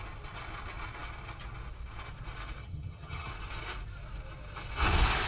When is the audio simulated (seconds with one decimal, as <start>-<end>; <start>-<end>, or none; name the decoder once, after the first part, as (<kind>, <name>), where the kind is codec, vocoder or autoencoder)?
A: 2.6-3.3 (vocoder, HiFi-GAN)